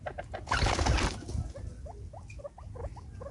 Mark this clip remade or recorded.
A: recorded